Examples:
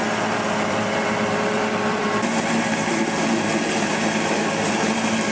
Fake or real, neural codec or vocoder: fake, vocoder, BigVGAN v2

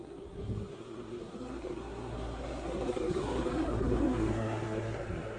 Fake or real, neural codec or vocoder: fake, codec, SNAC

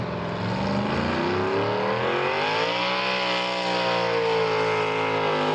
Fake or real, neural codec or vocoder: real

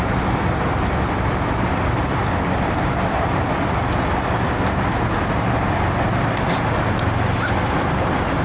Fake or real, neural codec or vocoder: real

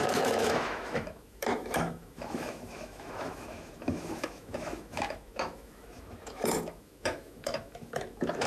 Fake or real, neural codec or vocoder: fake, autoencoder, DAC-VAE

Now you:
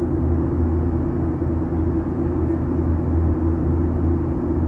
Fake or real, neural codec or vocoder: real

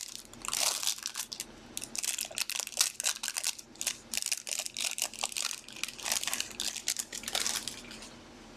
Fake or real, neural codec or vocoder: real